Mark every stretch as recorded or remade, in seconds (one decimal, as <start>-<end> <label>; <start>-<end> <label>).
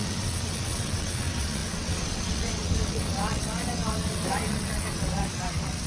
0.0-5.9 remade